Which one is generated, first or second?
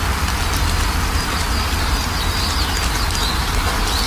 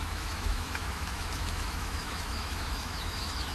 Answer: second